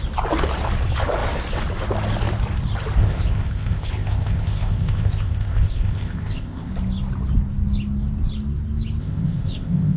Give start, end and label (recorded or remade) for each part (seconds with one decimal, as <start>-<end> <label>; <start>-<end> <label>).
0.0-3.0 recorded; 3.0-6.7 remade; 6.7-9.0 recorded; 9.0-10.0 remade